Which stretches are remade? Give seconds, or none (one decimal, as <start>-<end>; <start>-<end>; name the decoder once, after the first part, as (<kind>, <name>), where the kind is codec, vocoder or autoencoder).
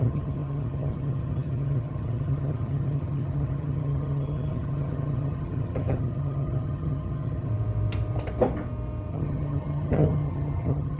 0.0-7.5 (vocoder, HiFi-GAN); 9.1-11.0